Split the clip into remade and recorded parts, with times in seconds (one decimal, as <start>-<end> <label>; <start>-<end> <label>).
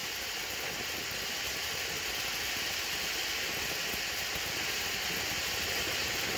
0.0-1.3 remade; 1.3-6.4 recorded